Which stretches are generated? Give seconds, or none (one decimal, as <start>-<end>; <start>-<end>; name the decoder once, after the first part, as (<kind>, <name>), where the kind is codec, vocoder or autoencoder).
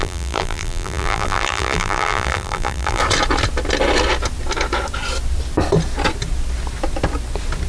0.0-3.0 (vocoder, BigVGAN v2)